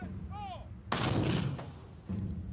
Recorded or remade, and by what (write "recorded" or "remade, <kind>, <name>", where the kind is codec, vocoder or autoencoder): recorded